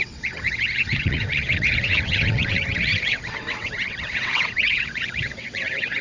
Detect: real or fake fake